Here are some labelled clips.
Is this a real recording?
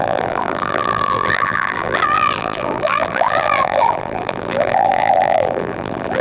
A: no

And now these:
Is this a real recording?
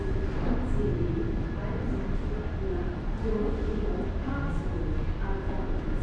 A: yes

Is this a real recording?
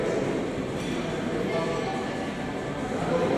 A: yes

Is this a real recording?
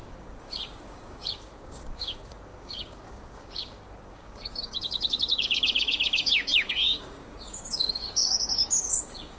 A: no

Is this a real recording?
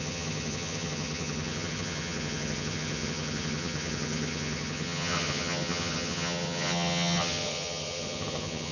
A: no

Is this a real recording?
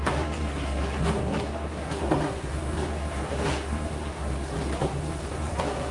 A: no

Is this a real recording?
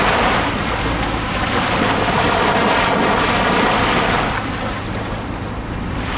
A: yes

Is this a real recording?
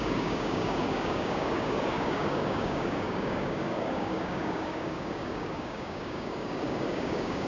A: no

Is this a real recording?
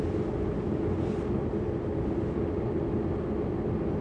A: yes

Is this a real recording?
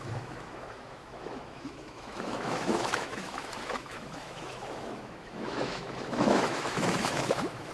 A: no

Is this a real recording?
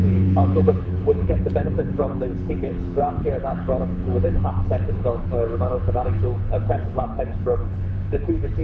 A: no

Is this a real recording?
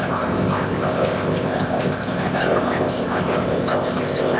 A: no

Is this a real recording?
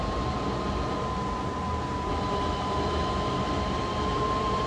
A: no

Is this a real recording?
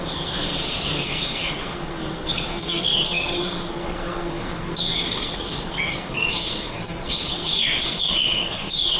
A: no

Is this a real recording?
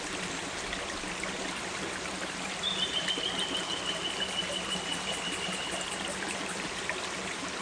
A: yes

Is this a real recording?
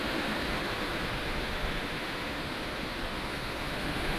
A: no